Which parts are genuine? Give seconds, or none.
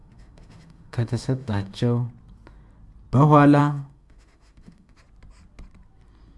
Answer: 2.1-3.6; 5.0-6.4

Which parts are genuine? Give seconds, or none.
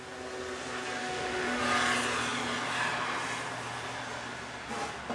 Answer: 0.0-1.0; 1.6-5.1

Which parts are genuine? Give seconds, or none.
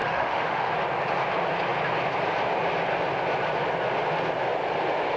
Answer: 0.7-5.2